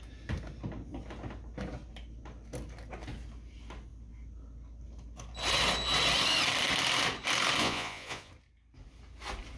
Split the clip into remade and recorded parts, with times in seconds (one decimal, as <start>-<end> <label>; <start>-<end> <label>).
0.0-7.6 recorded; 7.6-8.3 remade; 8.3-9.6 recorded